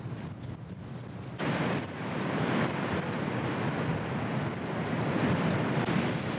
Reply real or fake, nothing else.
real